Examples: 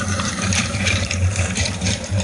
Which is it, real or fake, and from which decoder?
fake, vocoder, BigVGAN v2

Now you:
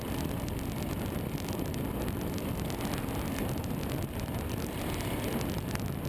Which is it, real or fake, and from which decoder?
real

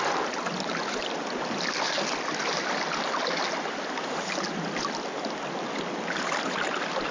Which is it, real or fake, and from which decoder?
real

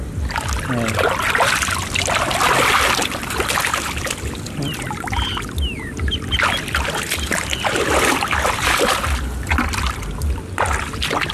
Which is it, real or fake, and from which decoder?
real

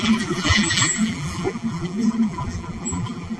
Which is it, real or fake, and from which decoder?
fake, vocoder, BigVGAN v2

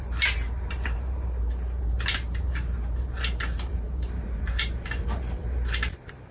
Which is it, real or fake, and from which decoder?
fake, vocoder, BigVGAN v2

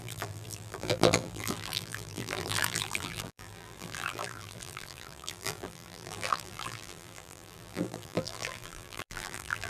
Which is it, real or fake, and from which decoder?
fake, vocoder, BigVGAN v2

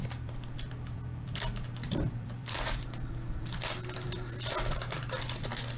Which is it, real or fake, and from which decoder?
fake, vocoder, BigVGAN v2